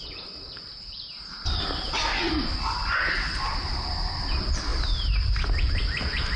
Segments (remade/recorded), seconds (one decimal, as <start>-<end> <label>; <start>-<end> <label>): 0.0-6.4 recorded